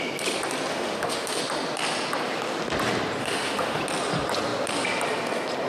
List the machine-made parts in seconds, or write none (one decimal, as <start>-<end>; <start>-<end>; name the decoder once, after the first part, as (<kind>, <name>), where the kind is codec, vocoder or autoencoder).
0.7-1.4 (autoencoder, DAC-VAE); 3.2-3.8